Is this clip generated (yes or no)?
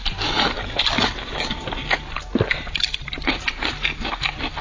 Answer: yes